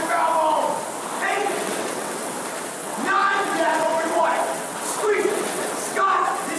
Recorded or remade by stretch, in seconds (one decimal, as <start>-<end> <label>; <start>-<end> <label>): 0.0-1.2 recorded; 1.2-2.3 remade; 2.3-2.8 recorded; 2.8-6.6 remade